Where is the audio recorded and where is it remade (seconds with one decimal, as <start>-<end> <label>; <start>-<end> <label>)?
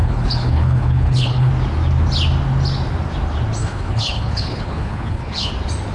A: 0.0-1.5 remade; 1.5-3.6 recorded; 3.6-5.5 remade; 5.5-5.9 recorded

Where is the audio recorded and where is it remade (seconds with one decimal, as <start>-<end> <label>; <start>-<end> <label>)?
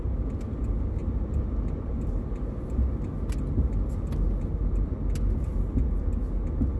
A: 0.0-6.8 recorded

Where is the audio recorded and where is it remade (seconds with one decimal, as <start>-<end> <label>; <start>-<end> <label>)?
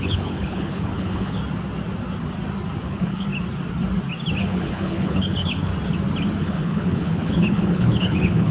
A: 0.0-1.4 remade; 1.4-2.8 recorded; 2.8-3.3 remade; 3.3-4.4 recorded; 4.4-5.7 remade; 5.7-6.4 recorded; 6.4-8.5 remade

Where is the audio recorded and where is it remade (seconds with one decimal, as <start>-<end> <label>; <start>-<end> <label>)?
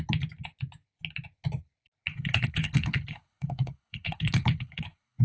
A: 0.0-2.1 recorded; 2.1-5.2 remade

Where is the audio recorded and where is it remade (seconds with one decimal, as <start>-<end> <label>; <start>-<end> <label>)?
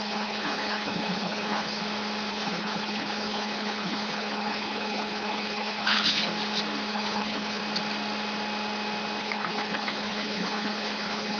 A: 0.0-1.8 remade; 1.8-2.3 recorded; 2.3-6.3 remade; 6.3-6.9 recorded; 6.9-7.6 remade; 7.6-9.2 recorded; 9.2-11.4 remade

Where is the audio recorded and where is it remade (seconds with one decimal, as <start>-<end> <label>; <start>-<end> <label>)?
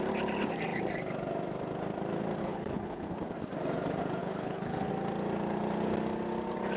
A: 0.0-2.4 recorded; 2.4-3.1 remade; 3.1-4.2 recorded; 4.2-4.9 remade; 4.9-6.8 recorded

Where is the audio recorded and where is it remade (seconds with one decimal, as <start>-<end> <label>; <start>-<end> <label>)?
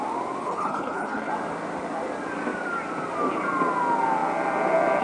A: 0.0-0.4 recorded; 0.4-1.3 remade; 1.3-5.0 recorded